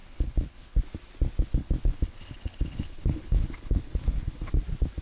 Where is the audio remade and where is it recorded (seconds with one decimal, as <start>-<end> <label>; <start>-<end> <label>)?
0.0-0.8 remade; 0.8-1.5 recorded; 1.5-4.5 remade; 4.5-5.0 recorded